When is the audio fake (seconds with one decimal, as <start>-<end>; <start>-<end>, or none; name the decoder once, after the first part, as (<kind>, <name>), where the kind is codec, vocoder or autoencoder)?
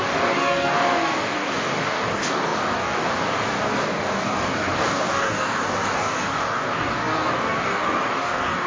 0.0-8.7 (codec, DAC)